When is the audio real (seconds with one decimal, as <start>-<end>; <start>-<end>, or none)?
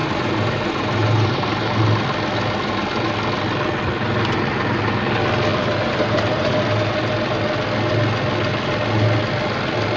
1.8-5.5; 6.5-10.0